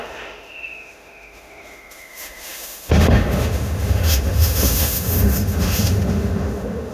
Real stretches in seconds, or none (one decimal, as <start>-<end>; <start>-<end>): none